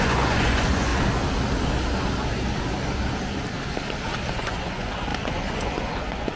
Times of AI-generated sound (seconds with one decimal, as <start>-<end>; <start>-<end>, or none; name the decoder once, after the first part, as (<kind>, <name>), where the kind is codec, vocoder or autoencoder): 0.0-0.9 (vocoder, Vocos); 4.3-6.4